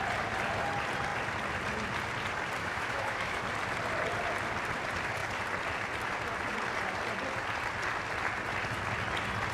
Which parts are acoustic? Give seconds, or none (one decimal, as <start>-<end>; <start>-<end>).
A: 0.0-2.6; 3.4-9.5